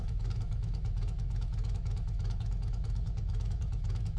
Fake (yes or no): yes